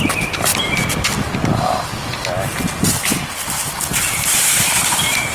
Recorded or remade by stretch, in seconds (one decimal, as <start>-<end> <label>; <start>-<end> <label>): 0.0-5.3 recorded